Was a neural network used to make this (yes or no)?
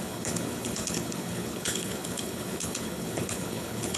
yes